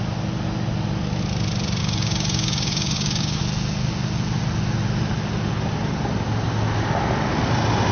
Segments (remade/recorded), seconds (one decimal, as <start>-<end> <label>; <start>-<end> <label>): 0.0-1.8 recorded; 1.8-3.4 remade; 3.4-7.9 recorded